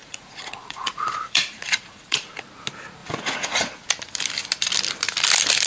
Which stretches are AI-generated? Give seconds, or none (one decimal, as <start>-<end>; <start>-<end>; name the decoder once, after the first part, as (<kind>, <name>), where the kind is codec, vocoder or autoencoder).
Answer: 0.0-2.4 (vocoder, Vocos); 3.0-3.9

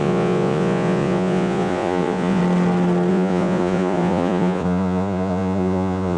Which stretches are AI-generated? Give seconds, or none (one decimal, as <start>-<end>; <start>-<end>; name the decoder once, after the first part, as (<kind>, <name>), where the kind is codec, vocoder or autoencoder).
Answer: 0.0-2.4 (vocoder, Vocos); 3.1-6.2

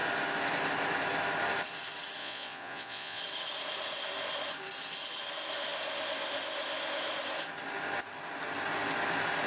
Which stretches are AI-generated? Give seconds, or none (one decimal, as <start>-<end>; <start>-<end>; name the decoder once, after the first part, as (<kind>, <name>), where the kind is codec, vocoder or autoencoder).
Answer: 2.2-3.2 (vocoder, Vocos)

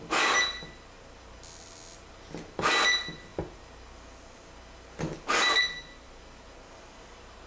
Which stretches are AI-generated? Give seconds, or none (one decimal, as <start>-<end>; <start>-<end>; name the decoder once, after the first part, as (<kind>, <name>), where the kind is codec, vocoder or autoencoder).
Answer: none